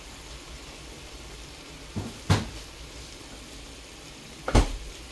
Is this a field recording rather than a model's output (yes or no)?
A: yes